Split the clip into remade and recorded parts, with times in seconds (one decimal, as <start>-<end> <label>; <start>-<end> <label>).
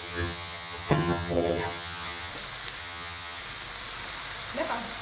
0.0-2.3 remade; 2.3-2.8 recorded; 2.8-3.4 remade; 3.4-5.0 recorded